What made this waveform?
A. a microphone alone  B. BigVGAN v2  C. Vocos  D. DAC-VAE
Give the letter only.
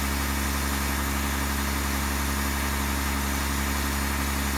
A